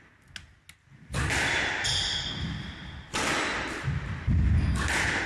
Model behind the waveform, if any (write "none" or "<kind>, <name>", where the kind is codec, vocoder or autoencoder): none